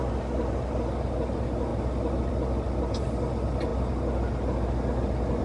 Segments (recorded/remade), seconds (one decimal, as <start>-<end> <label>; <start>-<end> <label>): 0.0-5.4 recorded